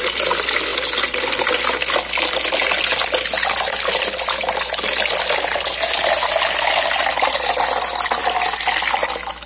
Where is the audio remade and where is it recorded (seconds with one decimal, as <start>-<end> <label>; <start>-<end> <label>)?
0.0-9.5 recorded